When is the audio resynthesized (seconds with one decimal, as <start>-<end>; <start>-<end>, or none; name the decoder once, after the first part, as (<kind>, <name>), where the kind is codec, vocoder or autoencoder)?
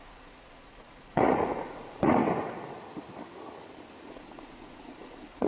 0.0-2.2 (vocoder, Vocos); 4.1-5.5